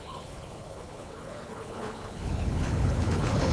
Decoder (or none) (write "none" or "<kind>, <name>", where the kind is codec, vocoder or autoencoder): codec, HILCodec